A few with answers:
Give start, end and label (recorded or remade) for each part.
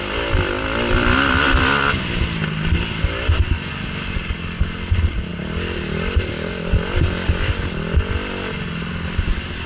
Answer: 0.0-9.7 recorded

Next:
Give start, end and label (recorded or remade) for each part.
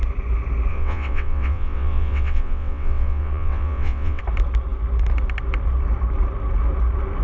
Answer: 0.0-0.7 recorded; 0.7-4.2 remade; 4.2-7.2 recorded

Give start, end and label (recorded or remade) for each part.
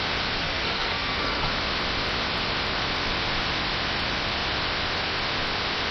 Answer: 0.0-0.4 recorded; 0.4-1.5 remade; 1.5-5.9 recorded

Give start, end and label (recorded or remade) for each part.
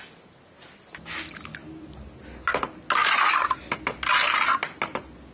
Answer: 0.0-3.0 recorded; 3.0-3.6 remade; 3.6-5.3 recorded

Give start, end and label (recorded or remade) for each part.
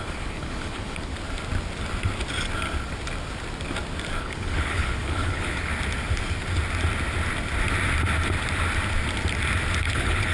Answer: 0.0-1.1 remade; 1.1-4.2 recorded; 4.2-5.7 remade; 5.7-9.8 recorded; 9.8-10.3 remade